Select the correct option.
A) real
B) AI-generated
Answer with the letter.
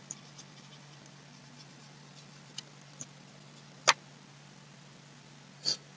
A